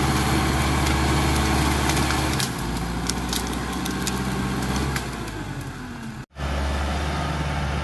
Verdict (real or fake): real